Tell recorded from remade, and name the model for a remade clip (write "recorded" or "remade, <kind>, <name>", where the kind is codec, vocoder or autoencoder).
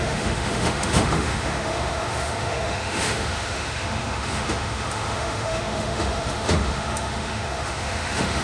remade, autoencoder, DAC-VAE